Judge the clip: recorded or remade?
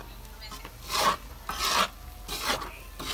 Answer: recorded